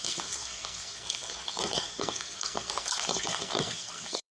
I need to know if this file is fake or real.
fake